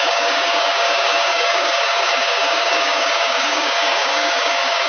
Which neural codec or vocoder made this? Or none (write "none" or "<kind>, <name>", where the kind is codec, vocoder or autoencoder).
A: codec, DAC